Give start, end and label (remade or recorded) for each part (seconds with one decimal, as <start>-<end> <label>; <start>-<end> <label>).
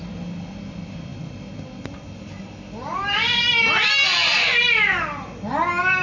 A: 0.0-1.1 remade; 1.1-2.2 recorded; 2.2-4.9 remade; 4.9-5.5 recorded; 5.5-6.0 remade